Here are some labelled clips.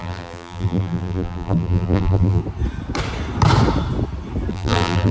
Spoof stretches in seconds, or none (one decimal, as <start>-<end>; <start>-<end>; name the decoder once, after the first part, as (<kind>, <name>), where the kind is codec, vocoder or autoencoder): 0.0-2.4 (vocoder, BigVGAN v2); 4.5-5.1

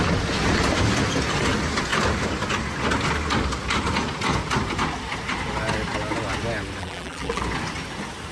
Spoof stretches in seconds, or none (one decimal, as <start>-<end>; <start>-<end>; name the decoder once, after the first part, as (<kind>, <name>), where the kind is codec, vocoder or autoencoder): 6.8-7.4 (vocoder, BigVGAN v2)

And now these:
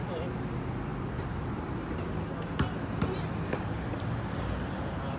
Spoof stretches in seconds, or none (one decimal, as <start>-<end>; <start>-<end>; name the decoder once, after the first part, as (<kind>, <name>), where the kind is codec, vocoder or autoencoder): none